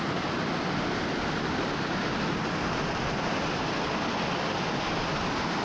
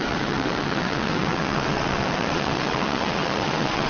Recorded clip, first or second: first